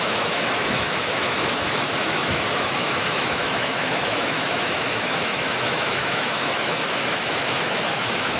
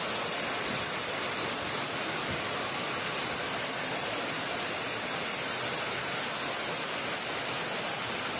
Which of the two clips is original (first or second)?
second